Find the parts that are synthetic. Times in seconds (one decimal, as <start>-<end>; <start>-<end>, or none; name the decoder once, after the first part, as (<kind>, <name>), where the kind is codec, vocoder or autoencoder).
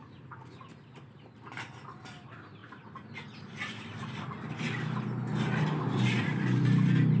2.6-7.2 (vocoder, BigVGAN v2)